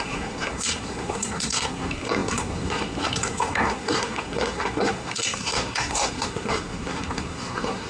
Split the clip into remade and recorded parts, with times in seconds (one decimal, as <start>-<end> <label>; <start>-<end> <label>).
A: 0.0-7.9 remade